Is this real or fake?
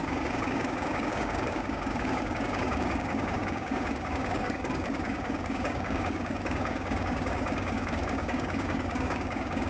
fake